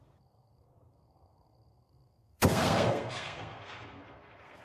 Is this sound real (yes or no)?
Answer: no